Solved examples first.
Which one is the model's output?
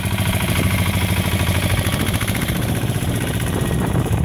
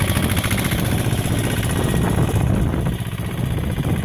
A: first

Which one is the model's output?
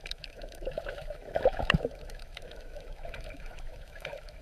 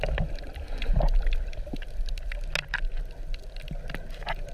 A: first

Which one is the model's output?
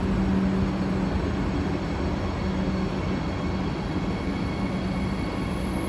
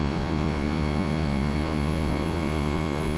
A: second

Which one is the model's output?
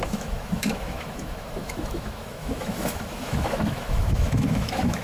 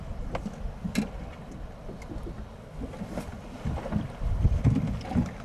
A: first